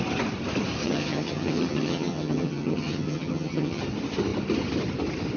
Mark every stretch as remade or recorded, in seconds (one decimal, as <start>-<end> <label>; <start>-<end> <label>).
0.0-0.8 recorded; 0.8-3.8 remade; 3.8-5.4 recorded